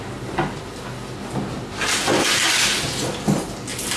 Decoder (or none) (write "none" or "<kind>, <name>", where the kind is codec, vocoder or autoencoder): none